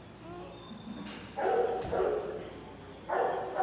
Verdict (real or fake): real